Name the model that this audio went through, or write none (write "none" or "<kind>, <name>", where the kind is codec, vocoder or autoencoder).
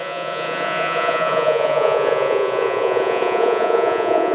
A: vocoder, Vocos